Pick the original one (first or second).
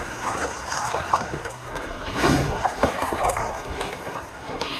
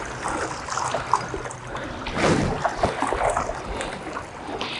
second